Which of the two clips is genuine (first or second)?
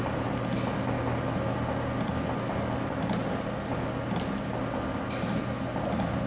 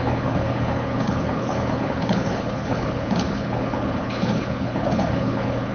first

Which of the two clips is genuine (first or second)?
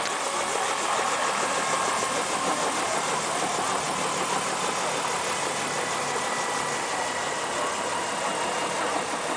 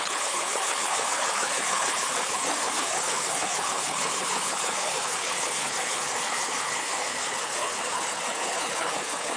first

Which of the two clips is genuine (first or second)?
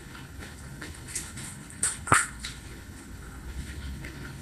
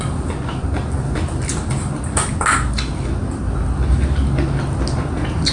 second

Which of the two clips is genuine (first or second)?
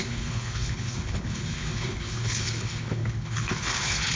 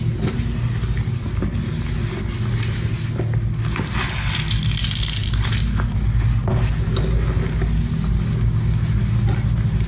second